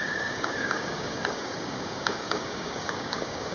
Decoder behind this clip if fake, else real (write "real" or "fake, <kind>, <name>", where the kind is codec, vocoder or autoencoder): fake, codec, DAC